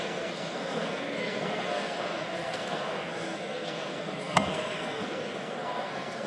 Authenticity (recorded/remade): remade